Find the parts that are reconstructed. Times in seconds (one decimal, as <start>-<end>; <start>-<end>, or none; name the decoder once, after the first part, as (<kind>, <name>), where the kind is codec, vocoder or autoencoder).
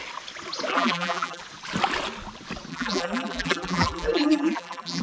0.7-1.4 (vocoder, BigVGAN v2); 2.7-5.0